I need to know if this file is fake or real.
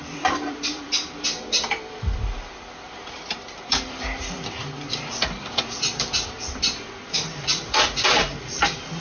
fake